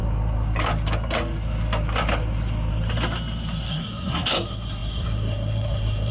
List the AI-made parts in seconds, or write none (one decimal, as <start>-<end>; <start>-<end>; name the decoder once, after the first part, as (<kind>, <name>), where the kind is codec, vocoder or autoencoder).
3.7-6.1 (codec, SNAC)